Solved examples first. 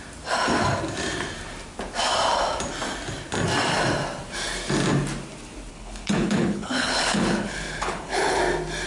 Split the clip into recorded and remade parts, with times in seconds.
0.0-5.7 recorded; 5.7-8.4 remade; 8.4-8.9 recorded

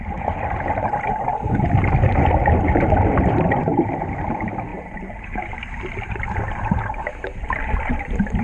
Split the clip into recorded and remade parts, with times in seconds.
0.0-2.4 recorded; 2.4-3.1 remade; 3.1-4.7 recorded; 4.7-5.8 remade; 5.8-8.4 recorded

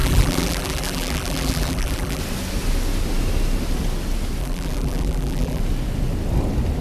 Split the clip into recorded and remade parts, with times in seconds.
0.0-2.2 remade; 2.2-4.4 recorded; 4.4-5.6 remade; 5.6-6.8 recorded

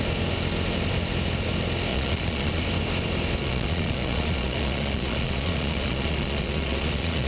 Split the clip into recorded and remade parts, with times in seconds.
0.0-1.9 recorded; 1.9-2.6 remade; 2.6-3.4 recorded; 3.4-7.3 remade

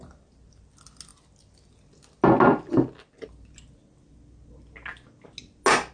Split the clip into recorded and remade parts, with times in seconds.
0.0-5.9 recorded

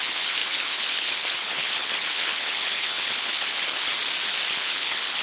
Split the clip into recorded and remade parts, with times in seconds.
0.0-3.9 remade; 3.9-4.5 recorded; 4.5-5.2 remade

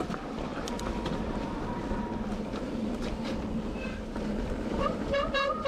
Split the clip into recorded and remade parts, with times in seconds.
0.0-5.7 recorded